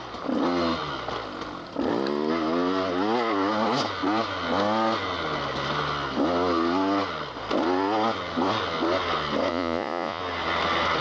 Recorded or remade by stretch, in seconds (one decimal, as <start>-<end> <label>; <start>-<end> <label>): 0.0-9.5 recorded; 9.5-10.2 remade; 10.2-11.0 recorded